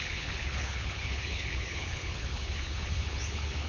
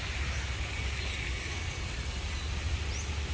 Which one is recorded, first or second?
second